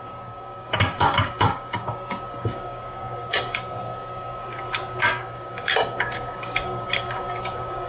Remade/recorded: remade